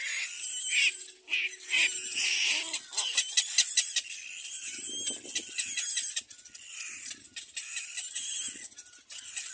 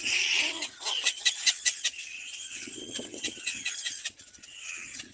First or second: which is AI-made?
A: second